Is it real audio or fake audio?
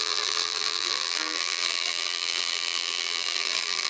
fake